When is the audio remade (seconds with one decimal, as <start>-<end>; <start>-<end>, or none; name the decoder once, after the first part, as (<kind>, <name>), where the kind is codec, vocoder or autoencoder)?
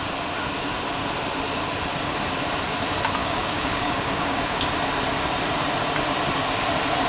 3.2-4.6 (codec, DAC)